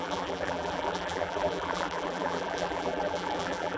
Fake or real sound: fake